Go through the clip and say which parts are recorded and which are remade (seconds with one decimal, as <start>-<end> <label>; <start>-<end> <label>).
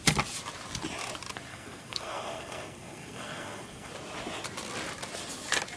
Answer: 0.0-1.5 recorded; 1.5-3.9 remade; 3.9-5.8 recorded